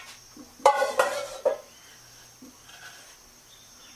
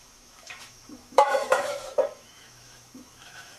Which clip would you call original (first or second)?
first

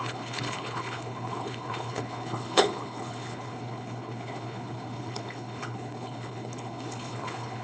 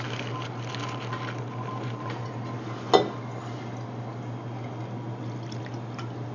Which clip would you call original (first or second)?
second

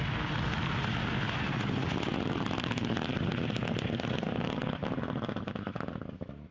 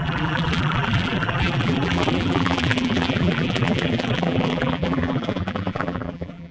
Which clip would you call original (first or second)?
first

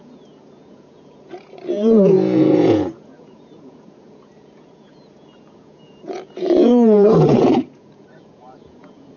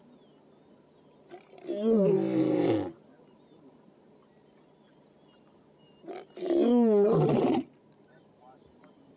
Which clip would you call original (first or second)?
second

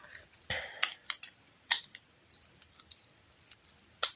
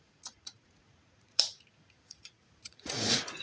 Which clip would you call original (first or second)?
first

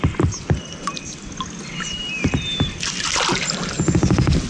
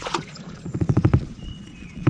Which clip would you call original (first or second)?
first